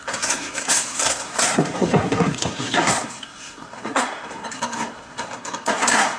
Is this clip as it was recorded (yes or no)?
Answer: no